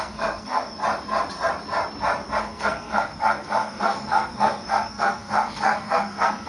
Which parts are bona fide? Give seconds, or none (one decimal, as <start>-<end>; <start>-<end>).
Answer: 0.8-2.4